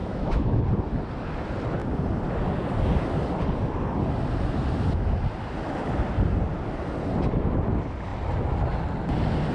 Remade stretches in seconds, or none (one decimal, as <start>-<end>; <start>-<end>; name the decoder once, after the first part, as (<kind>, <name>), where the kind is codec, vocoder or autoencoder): 0.0-0.6 (autoencoder, DAC-VAE)